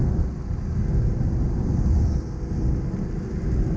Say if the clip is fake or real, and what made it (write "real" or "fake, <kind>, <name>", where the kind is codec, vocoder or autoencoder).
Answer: real